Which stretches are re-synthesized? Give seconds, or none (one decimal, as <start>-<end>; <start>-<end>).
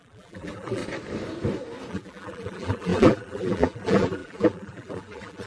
0.0-0.8; 1.9-5.5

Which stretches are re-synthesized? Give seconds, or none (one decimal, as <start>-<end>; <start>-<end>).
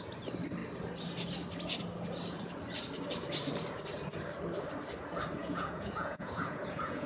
5.4-7.1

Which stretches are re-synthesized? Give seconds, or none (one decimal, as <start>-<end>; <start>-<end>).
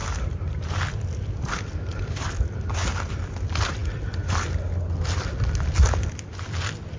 none